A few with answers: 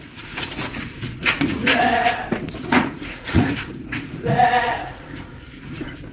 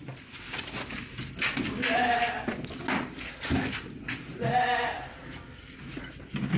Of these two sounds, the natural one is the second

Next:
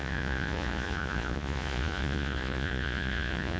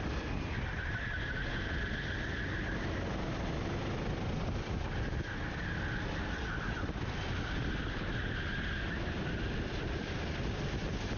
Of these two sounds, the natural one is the second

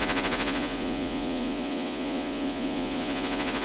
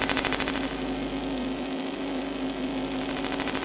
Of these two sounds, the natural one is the second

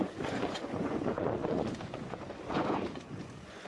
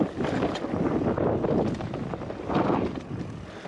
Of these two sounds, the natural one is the second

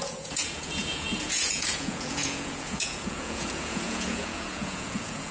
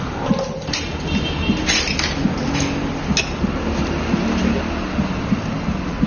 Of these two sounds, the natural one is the second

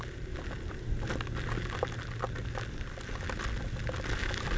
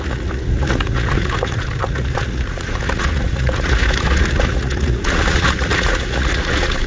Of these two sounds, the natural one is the first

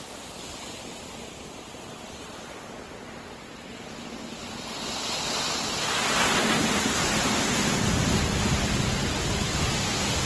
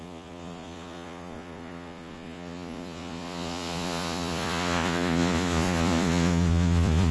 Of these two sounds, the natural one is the first